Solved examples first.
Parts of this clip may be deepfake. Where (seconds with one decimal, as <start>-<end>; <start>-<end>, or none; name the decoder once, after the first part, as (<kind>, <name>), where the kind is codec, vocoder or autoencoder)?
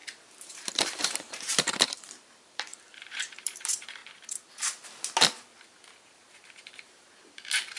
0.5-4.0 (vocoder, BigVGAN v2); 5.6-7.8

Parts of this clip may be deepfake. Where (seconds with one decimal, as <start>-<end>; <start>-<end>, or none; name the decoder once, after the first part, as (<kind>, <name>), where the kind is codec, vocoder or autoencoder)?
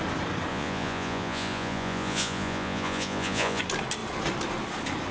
0.5-3.6 (vocoder, Vocos)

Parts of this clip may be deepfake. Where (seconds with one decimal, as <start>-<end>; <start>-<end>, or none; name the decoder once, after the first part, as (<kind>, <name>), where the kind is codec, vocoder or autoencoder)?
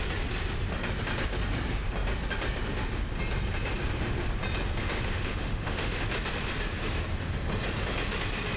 4.8-6.0 (autoencoder, DAC-VAE)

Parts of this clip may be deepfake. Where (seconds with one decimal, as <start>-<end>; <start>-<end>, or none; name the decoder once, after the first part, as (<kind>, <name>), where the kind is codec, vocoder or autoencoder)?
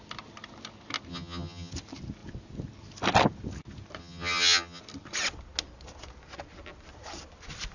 1.1-1.7 (vocoder, HiFi-GAN); 4.0-4.8